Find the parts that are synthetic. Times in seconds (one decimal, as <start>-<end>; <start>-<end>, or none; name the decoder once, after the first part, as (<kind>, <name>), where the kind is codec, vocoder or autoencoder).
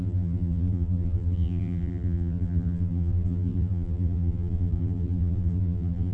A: 0.0-6.1 (vocoder, BigVGAN v2)